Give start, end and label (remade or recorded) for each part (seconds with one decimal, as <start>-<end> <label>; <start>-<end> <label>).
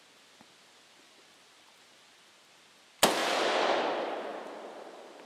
0.0-5.3 recorded